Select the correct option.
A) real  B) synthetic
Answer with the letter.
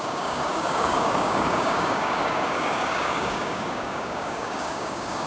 B